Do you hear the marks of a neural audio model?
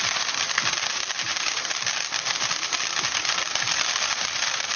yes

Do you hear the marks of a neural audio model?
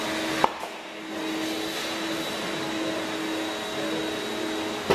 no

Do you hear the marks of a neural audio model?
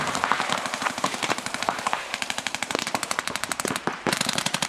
yes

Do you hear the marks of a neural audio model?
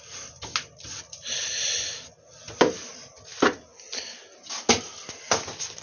no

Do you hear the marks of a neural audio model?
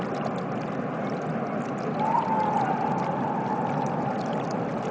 no